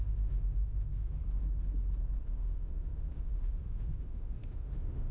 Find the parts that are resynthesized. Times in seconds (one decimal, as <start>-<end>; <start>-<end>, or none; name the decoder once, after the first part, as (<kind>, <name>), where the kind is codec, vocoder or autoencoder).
0.0-1.2 (autoencoder, DAC-VAE); 2.2-5.1